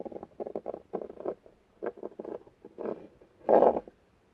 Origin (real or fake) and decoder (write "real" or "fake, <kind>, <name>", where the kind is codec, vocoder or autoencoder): real